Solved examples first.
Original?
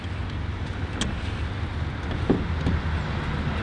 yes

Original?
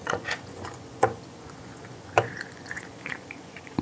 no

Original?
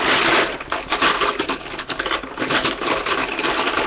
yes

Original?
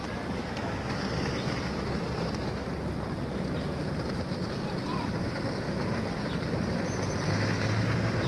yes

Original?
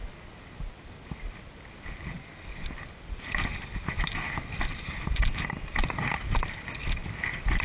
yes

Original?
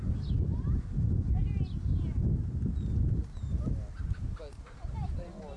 yes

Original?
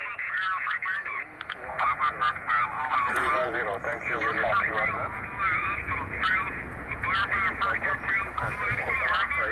no